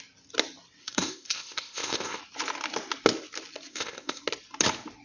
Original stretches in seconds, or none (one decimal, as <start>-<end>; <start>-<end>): 0.0-0.8; 2.2-3.7; 4.2-5.0